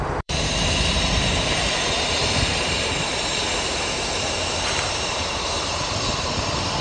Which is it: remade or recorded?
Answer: remade